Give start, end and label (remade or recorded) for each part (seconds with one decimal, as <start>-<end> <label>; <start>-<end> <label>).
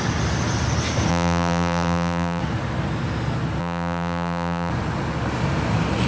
0.0-1.1 recorded; 1.1-2.4 remade; 2.4-3.6 recorded; 3.6-4.7 remade; 4.7-6.1 recorded